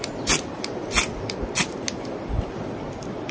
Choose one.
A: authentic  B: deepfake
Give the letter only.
A